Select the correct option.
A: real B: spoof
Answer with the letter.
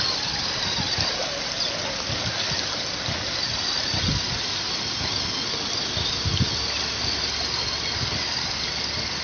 A